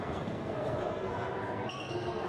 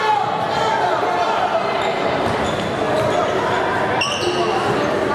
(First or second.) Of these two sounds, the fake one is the first